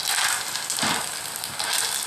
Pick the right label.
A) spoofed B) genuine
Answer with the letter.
B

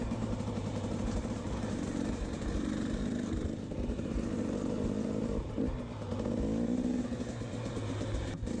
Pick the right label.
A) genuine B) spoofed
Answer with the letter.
B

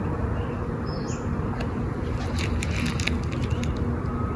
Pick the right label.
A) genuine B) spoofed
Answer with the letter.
A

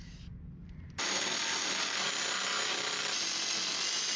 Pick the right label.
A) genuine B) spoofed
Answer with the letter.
A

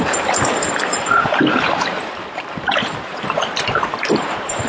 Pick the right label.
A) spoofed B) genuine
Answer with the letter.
A